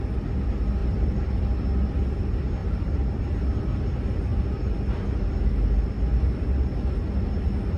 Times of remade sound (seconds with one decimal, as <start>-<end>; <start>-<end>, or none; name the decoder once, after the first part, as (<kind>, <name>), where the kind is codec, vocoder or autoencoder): 0.8-1.4 (vocoder, BigVGAN v2); 2.6-3.2